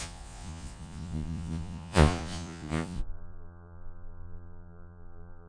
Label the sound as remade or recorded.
remade